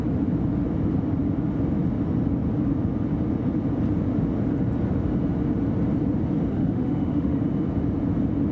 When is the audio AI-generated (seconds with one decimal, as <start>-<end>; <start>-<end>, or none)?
6.5-7.4